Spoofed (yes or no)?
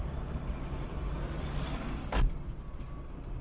no